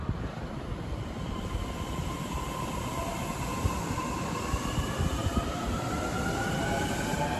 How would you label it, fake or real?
real